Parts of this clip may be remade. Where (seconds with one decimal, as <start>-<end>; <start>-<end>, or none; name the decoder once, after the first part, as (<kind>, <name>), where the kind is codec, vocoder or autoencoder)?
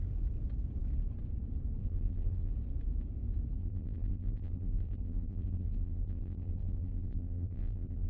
1.8-2.5 (vocoder, BigVGAN v2); 3.6-8.1